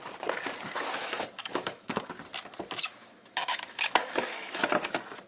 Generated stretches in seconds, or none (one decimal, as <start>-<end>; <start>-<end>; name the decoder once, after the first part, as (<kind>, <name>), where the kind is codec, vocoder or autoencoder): 1.0-2.1 (autoencoder, DAC-VAE); 2.8-4.6